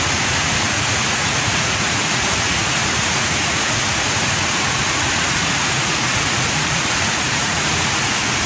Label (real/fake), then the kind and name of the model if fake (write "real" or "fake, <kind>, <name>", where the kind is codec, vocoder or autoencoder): fake, vocoder, Vocos